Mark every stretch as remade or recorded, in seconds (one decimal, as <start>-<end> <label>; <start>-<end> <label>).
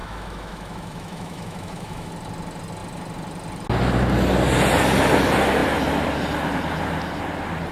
0.0-2.1 remade; 2.1-7.7 recorded